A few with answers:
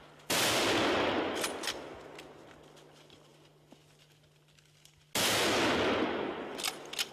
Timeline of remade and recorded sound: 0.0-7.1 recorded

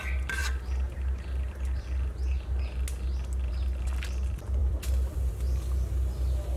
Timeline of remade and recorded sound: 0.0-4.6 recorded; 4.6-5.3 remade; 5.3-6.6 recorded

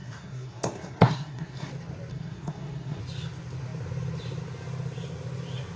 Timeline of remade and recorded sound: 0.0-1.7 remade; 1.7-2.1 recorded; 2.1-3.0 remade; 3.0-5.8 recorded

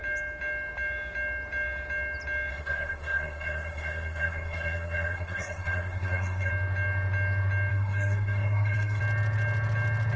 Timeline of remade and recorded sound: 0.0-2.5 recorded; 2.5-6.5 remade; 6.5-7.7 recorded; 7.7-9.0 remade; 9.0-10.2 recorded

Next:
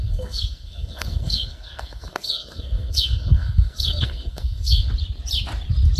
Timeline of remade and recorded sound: 0.0-4.9 remade; 4.9-6.0 recorded

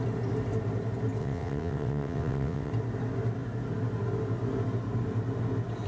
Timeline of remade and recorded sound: 0.0-1.2 recorded; 1.2-2.7 remade; 2.7-5.9 recorded